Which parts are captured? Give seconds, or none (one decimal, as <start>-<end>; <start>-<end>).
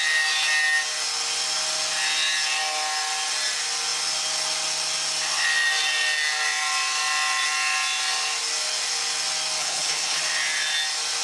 0.0-9.6; 10.2-11.2